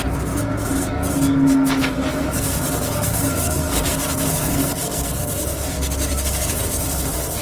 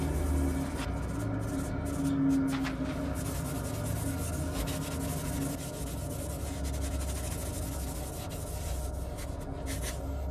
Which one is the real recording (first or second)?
second